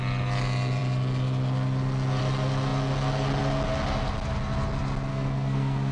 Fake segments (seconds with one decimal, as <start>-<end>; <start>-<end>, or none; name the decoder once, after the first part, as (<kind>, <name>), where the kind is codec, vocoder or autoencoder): 5.1-5.9 (codec, SNAC)